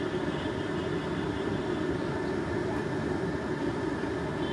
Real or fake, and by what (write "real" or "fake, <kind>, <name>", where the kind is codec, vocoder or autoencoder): real